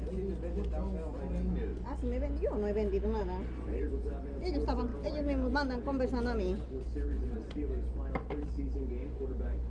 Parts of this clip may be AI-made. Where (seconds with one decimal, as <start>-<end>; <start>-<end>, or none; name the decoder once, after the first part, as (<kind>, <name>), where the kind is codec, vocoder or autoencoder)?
none